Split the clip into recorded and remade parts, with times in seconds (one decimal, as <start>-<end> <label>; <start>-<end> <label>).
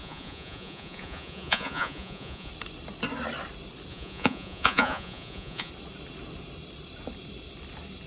0.0-2.5 remade; 2.5-3.9 recorded; 3.9-5.7 remade; 5.7-8.1 recorded